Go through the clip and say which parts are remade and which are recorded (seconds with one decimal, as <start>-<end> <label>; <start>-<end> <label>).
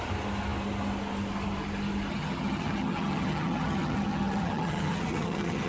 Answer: 0.0-2.1 recorded; 2.1-5.7 remade